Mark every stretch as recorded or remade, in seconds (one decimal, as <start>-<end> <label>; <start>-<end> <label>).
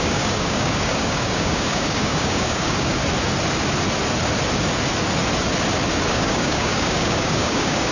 0.0-3.0 remade; 3.0-6.1 recorded; 6.1-7.9 remade